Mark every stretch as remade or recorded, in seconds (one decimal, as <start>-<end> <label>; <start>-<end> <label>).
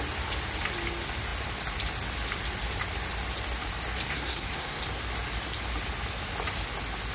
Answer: 0.0-4.1 recorded; 4.1-4.8 remade; 4.8-7.1 recorded